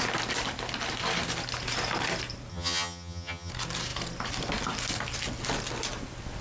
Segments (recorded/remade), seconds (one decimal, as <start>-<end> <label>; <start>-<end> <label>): 0.0-2.5 recorded; 2.5-3.5 remade; 3.5-6.4 recorded